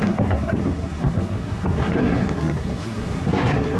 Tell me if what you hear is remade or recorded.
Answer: remade